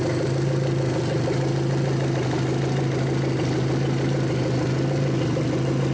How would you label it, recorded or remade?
recorded